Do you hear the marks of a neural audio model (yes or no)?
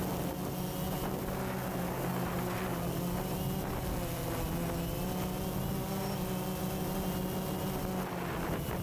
no